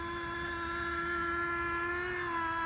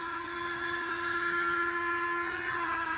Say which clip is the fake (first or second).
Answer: second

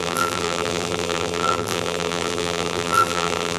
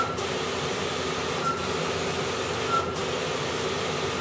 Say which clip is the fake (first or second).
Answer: first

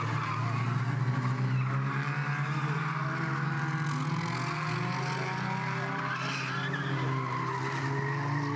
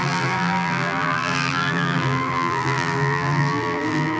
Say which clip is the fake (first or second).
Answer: second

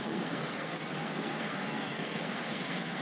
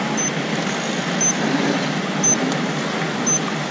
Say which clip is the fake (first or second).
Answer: first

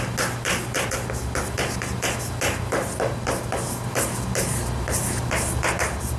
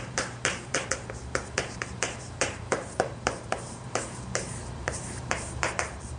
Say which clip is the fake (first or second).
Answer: second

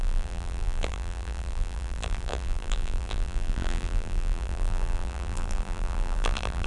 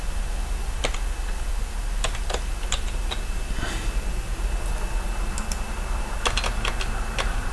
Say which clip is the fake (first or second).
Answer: first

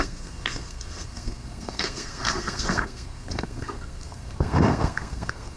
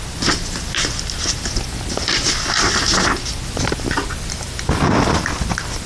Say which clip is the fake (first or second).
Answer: first